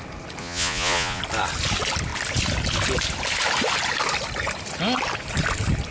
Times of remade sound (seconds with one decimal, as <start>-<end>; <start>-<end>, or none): 0.4-1.2